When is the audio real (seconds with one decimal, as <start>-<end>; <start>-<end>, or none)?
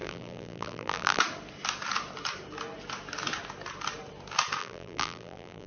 1.2-4.6